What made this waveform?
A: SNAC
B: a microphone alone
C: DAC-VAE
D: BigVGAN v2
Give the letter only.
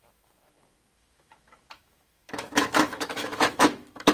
C